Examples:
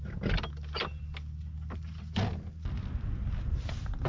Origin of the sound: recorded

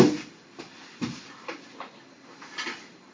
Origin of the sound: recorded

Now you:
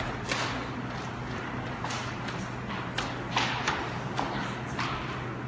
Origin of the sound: recorded